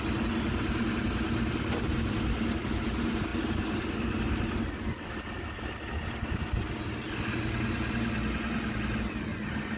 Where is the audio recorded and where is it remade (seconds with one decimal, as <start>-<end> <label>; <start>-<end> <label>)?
0.0-9.8 recorded